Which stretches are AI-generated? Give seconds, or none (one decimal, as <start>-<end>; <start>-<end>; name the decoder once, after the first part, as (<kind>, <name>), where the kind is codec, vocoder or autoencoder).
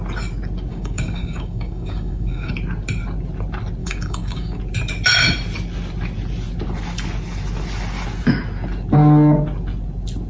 0.7-2.5 (codec, DAC); 3.8-4.6